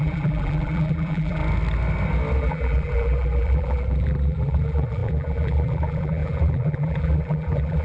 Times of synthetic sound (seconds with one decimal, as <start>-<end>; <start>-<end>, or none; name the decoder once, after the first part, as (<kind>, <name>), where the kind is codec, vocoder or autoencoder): 0.0-1.4 (vocoder, BigVGAN v2); 2.4-7.8